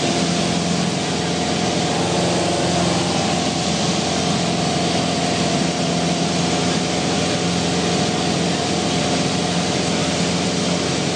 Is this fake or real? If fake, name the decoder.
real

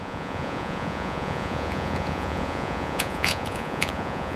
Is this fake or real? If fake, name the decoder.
fake, vocoder, Vocos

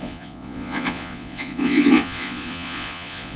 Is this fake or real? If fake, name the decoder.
fake, vocoder, Vocos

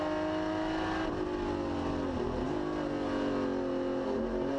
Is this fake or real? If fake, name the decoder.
real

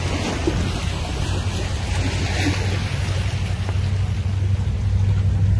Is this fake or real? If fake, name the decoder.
real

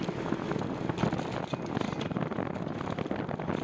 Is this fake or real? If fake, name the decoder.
real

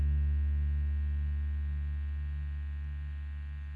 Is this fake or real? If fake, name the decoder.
real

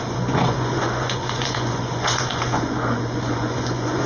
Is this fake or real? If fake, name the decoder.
fake, vocoder, Vocos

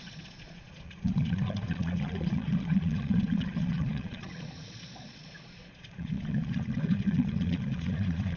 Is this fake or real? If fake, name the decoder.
fake, vocoder, Vocos